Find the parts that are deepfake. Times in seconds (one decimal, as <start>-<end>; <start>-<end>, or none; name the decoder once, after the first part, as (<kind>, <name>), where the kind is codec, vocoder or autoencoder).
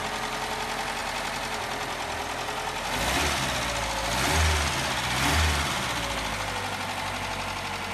none